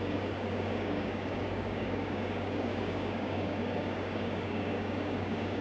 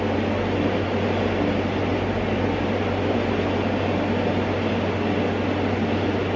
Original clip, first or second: second